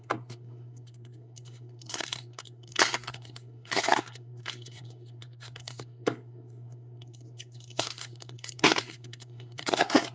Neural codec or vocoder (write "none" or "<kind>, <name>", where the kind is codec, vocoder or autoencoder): codec, SNAC